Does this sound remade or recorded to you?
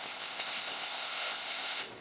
remade